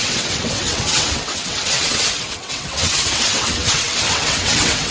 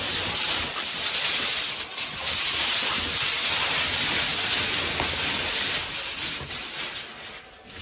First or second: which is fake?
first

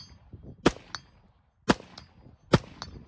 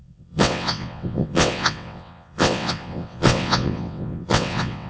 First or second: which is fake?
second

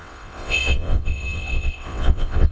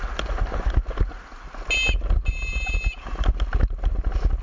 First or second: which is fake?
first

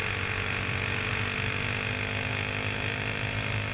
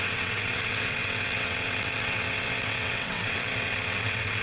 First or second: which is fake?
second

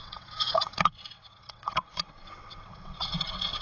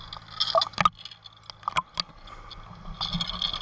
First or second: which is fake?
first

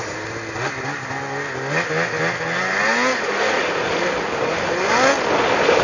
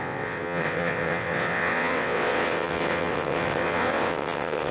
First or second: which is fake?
second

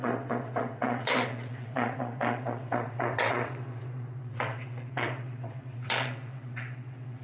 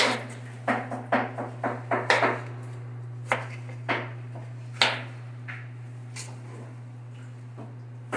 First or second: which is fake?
first